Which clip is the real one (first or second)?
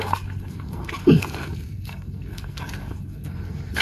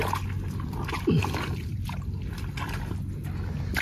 second